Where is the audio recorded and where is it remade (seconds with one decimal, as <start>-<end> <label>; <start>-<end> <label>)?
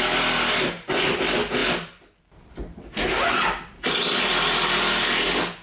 0.0-5.6 recorded